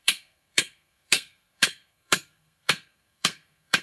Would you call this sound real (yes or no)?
no